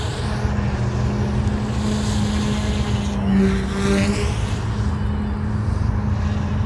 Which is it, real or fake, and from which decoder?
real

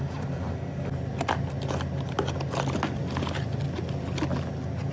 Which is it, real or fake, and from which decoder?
real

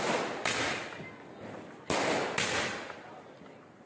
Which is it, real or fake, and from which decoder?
real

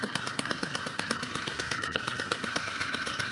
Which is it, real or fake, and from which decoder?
fake, codec, SNAC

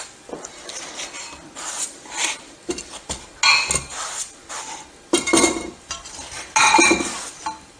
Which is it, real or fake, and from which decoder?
real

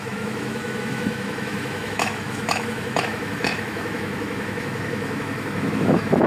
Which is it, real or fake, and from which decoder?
fake, autoencoder, DAC-VAE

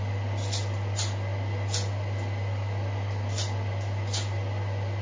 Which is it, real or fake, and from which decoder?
real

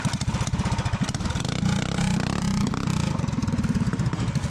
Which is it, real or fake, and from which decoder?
real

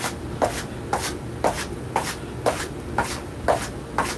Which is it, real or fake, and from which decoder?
real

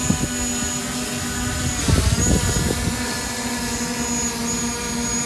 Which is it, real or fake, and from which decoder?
real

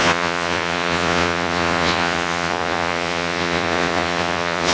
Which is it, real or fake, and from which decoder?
fake, vocoder, Vocos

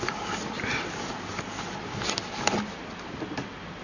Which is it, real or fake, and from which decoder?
real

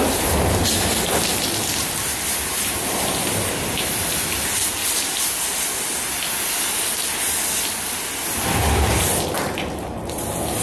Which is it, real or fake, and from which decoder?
real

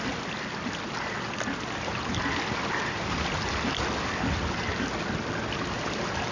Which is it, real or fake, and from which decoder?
real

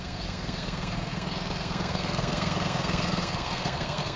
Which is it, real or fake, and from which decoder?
fake, codec, SNAC